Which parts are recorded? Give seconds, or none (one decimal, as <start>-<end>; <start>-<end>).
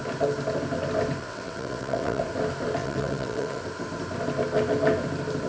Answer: 0.0-1.2; 2.2-2.8; 3.6-5.5